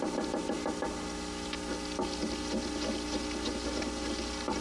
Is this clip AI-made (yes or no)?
no